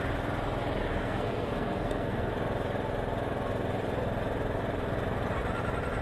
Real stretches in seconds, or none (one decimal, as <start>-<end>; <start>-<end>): 0.0-0.9; 2.3-6.0

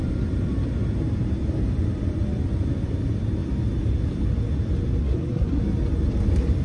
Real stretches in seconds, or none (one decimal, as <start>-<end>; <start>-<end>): 0.0-5.0; 5.6-6.6